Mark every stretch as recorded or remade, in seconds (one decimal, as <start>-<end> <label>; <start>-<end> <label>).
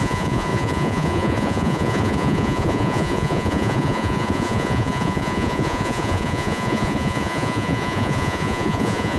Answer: 0.0-9.2 remade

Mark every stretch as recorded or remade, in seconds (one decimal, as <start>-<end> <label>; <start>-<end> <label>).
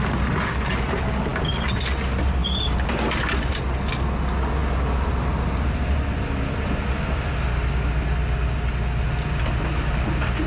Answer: 0.0-10.5 recorded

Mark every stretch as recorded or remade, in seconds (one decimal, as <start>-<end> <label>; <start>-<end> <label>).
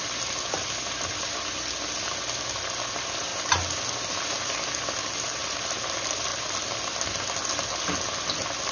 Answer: 0.0-8.7 recorded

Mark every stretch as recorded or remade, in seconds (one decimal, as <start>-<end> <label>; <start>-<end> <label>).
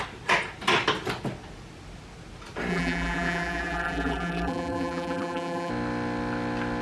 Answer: 0.0-2.7 recorded; 2.7-5.7 remade; 5.7-6.8 recorded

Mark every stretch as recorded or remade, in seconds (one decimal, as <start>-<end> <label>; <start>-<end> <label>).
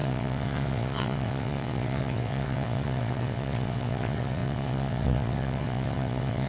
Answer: 0.0-6.5 remade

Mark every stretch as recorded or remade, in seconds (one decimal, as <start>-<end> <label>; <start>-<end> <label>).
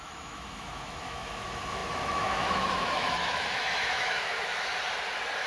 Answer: 0.0-4.7 remade; 4.7-5.5 recorded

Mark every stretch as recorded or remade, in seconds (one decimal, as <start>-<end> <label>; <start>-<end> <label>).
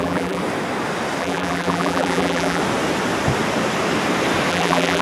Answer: 0.0-0.4 remade; 0.4-1.2 recorded; 1.2-2.6 remade; 2.6-4.5 recorded; 4.5-5.0 remade